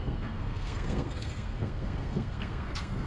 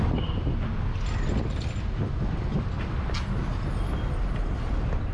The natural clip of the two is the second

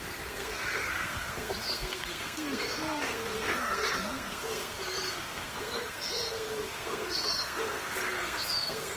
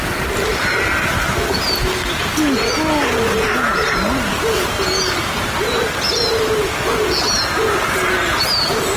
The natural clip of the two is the second